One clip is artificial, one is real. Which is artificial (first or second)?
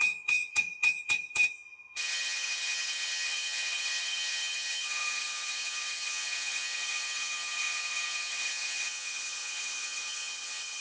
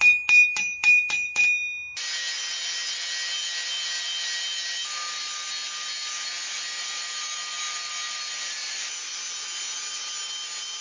first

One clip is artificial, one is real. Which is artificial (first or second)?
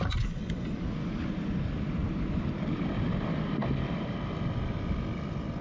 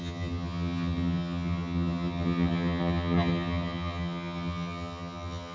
second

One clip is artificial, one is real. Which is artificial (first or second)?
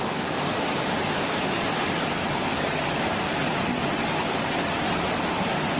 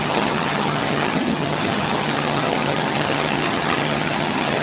second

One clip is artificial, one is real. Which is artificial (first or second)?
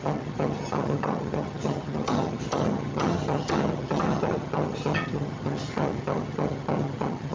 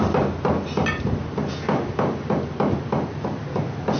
first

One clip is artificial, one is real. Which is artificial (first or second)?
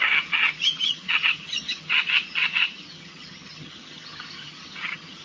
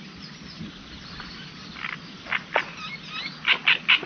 first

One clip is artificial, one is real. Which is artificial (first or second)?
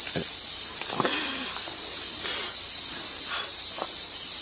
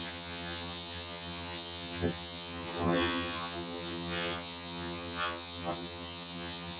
second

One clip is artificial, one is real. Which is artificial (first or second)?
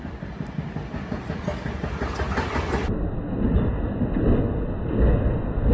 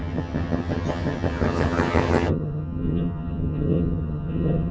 second